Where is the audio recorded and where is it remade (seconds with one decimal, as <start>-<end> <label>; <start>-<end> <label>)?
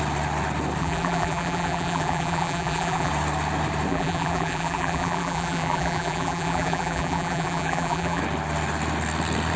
0.0-0.8 recorded; 0.8-3.1 remade; 3.1-3.9 recorded; 3.9-8.2 remade; 8.2-9.6 recorded